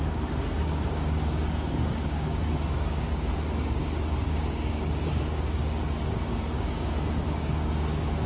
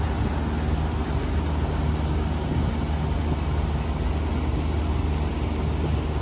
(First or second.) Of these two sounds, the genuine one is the second